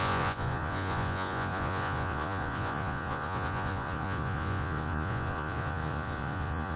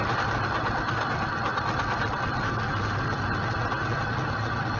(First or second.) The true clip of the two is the second